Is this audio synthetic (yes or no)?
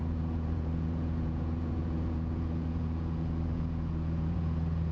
yes